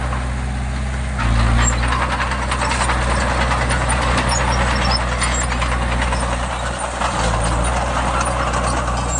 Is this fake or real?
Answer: real